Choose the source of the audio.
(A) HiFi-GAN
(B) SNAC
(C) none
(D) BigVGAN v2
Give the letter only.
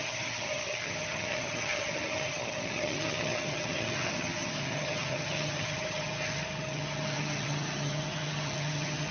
A